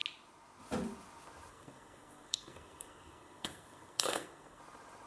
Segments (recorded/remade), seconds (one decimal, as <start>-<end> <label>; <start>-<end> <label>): 0.0-1.5 recorded; 1.5-4.6 remade; 4.6-5.1 recorded